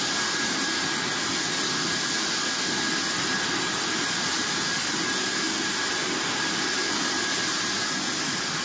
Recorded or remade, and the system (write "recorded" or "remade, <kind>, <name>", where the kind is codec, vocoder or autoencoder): recorded